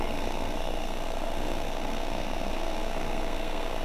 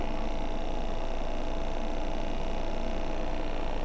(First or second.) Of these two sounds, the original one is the second